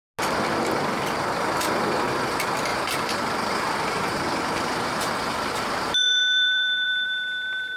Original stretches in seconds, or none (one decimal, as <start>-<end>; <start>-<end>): 0.0-2.7